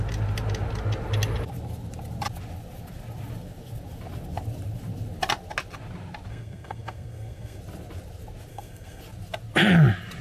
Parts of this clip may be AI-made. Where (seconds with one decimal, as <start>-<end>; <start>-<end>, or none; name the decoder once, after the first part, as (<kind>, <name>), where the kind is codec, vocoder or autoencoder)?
6.3-7.6 (codec, SNAC); 8.5-9.0